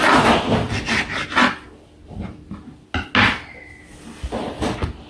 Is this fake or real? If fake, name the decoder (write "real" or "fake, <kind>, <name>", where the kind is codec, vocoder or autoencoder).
real